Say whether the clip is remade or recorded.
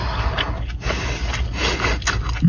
recorded